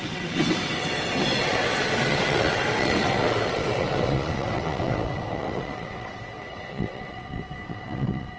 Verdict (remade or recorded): remade